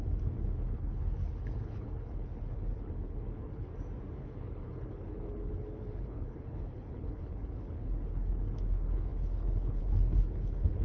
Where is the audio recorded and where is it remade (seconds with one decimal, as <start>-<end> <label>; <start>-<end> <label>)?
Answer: 0.0-3.7 remade; 3.7-4.2 recorded; 4.2-10.8 remade